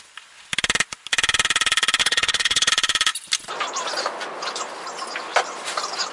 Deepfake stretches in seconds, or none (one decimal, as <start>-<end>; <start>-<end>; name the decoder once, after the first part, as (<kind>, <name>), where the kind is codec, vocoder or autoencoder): 2.0-2.7 (codec, HILCodec)